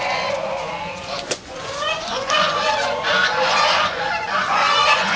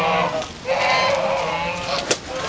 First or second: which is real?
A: second